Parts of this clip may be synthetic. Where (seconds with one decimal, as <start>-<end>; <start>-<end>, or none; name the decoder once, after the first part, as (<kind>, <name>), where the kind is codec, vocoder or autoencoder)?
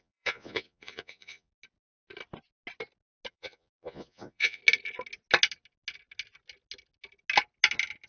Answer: 0.0-1.5 (vocoder, Vocos); 3.3-4.6